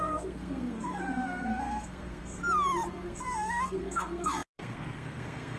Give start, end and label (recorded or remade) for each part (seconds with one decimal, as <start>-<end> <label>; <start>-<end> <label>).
0.0-2.4 remade; 2.4-2.9 recorded; 2.9-5.6 remade